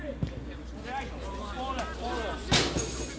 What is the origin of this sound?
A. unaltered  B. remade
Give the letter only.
A